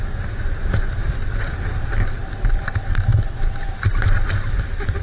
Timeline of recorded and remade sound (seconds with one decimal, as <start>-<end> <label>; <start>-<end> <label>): 0.0-1.0 recorded; 1.0-1.9 remade; 1.9-3.1 recorded; 3.1-4.6 remade; 4.6-5.0 recorded